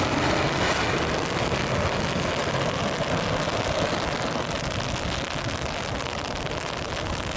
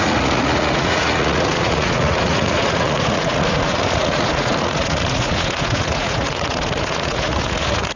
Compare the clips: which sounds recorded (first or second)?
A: first